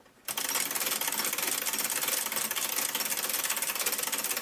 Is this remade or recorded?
recorded